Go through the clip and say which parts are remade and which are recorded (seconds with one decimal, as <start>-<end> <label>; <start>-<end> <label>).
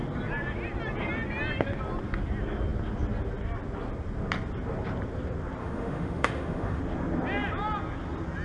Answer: 0.0-5.6 recorded; 5.6-6.8 remade; 6.8-8.4 recorded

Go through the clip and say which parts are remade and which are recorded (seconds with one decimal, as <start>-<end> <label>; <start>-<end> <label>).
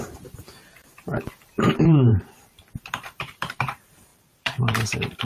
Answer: 0.0-0.4 remade; 0.4-1.6 recorded; 1.6-5.2 remade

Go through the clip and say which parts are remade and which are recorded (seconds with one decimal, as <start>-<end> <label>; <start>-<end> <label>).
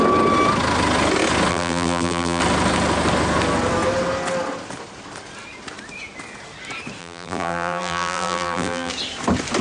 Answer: 0.0-1.5 recorded; 1.5-2.4 remade; 2.4-7.0 recorded; 7.0-8.9 remade; 8.9-9.6 recorded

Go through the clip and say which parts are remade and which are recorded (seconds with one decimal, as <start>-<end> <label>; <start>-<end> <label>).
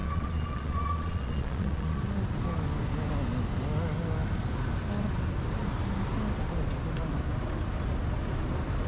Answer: 0.0-2.0 remade; 2.0-8.9 recorded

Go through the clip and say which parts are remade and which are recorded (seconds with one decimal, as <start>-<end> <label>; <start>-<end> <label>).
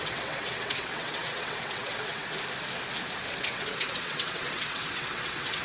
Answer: 0.0-2.2 remade; 2.2-3.3 recorded; 3.3-5.6 remade